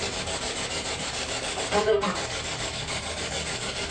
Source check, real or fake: fake